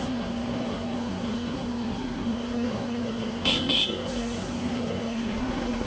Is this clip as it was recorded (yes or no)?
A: no